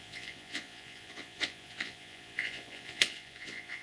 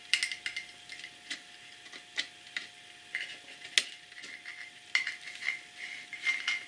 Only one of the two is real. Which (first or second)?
second